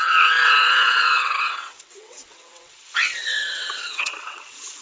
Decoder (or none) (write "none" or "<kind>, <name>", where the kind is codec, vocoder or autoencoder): vocoder, WaveNeXt